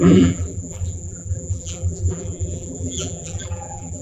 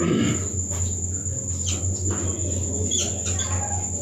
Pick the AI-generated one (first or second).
first